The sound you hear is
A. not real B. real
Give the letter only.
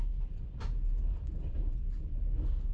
B